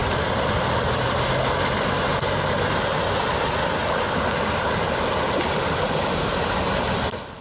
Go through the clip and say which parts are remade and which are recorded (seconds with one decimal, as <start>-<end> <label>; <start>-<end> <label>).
0.0-7.4 recorded